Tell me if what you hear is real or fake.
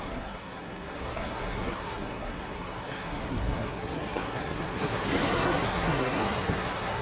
fake